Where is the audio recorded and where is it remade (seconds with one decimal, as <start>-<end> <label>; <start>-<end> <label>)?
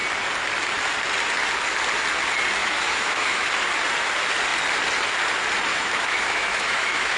0.0-2.6 recorded; 2.6-3.5 remade; 3.5-5.7 recorded; 5.7-7.2 remade